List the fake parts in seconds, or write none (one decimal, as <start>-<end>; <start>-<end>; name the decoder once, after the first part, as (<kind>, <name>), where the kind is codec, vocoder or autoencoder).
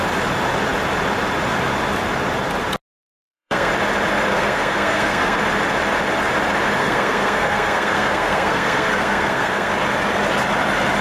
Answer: 3.0-3.7 (codec, SNAC); 4.3-5.4; 6.8-9.7